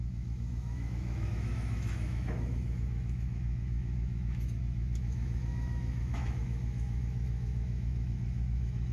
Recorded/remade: remade